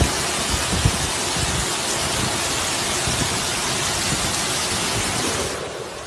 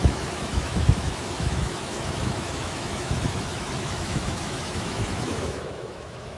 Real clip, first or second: first